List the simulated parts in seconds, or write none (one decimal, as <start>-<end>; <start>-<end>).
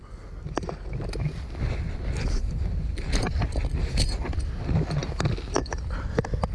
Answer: none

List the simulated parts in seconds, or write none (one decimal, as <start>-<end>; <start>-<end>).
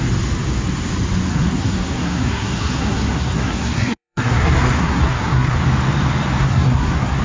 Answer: 1.3-5.6; 6.4-7.2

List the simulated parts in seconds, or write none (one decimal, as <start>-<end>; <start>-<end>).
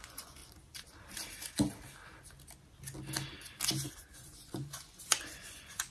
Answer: 0.0-0.4; 3.9-5.9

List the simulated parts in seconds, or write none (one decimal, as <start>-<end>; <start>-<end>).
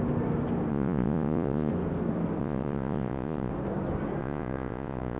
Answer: 0.7-1.7; 2.4-3.5; 4.2-5.2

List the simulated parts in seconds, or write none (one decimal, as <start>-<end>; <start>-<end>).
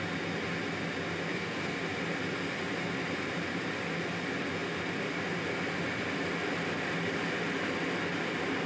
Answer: 1.3-1.8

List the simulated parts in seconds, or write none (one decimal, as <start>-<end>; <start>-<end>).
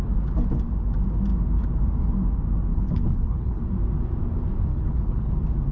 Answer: 2.7-3.6; 4.7-5.3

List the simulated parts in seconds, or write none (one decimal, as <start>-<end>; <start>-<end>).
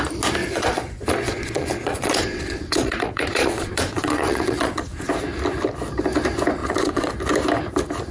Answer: 0.4-5.1; 6.6-7.1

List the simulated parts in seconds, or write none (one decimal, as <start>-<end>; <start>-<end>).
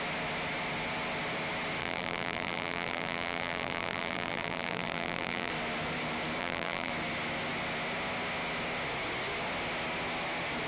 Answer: 1.8-5.5; 6.4-6.9